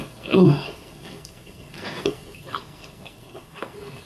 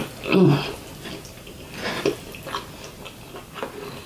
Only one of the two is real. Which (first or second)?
second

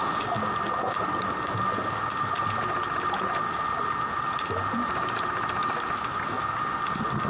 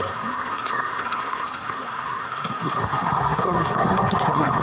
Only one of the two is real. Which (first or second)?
first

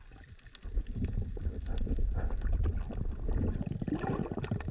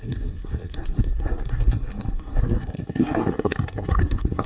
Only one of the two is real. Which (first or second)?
first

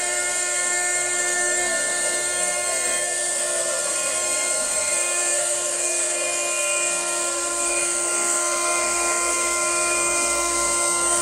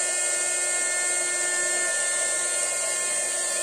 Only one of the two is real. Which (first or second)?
second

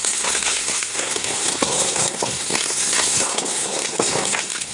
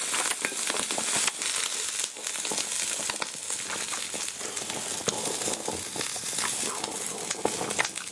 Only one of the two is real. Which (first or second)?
second